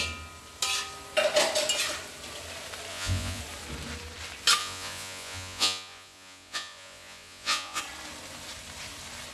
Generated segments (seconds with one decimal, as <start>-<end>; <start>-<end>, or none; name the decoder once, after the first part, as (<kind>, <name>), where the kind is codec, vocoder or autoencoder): 2.9-3.4 (vocoder, Vocos); 4.6-7.8